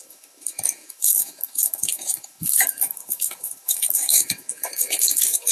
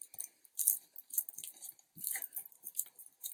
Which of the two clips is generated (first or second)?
first